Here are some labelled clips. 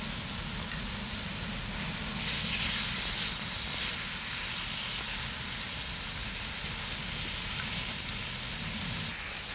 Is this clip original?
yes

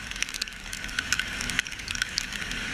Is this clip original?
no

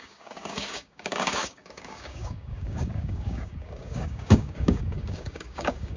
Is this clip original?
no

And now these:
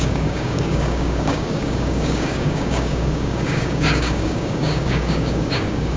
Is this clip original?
no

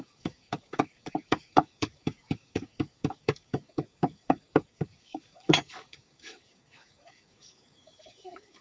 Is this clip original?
no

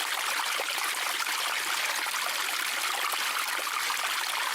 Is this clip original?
yes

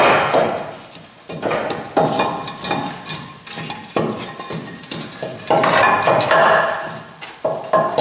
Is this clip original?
yes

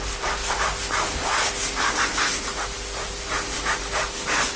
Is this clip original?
yes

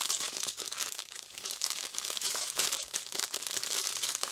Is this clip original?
no